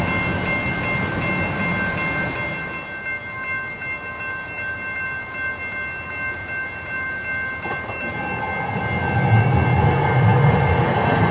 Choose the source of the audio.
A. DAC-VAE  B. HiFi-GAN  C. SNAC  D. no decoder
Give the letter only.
D